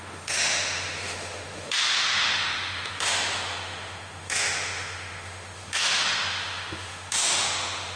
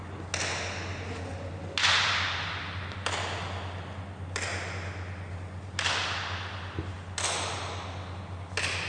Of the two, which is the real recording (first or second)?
second